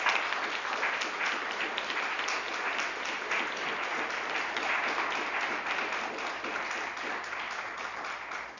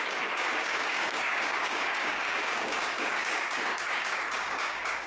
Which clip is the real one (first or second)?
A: first